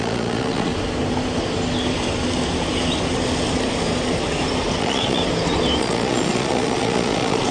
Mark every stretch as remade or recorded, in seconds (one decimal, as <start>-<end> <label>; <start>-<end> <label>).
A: 0.0-0.7 remade; 0.7-4.8 recorded; 4.8-5.2 remade; 5.2-5.8 recorded; 5.8-7.5 remade